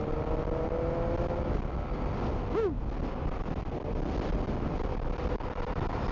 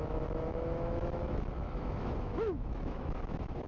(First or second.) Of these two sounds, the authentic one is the first